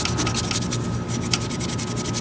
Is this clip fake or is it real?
real